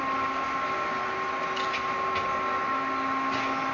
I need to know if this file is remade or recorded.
recorded